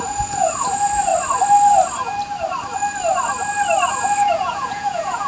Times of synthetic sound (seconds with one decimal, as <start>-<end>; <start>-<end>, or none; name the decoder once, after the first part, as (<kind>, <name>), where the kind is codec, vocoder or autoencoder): 0.0-1.1 (vocoder, Vocos); 3.9-5.3